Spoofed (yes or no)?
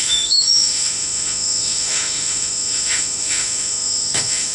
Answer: yes